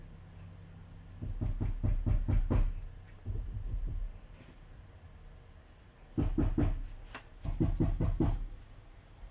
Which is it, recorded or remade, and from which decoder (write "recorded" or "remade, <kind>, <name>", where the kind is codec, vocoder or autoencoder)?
recorded